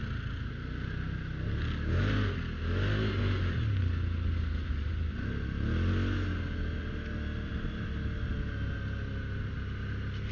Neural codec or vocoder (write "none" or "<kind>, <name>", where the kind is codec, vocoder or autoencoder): none